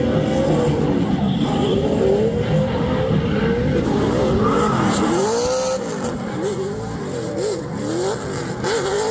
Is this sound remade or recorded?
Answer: recorded